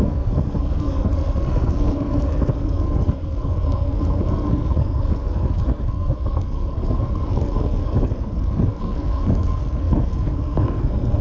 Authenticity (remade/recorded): remade